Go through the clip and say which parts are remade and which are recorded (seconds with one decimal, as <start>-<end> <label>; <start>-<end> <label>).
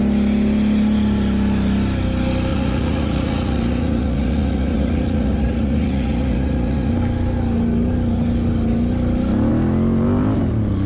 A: 0.0-2.5 recorded; 2.5-6.9 remade; 6.9-10.9 recorded